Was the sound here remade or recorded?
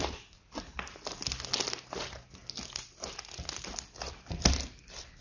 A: recorded